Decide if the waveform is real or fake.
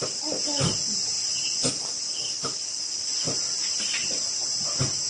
real